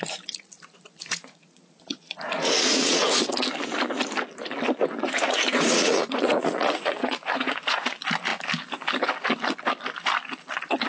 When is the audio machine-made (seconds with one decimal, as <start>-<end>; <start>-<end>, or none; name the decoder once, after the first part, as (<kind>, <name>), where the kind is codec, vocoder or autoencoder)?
1.0-3.0 (vocoder, Vocos); 5.0-7.9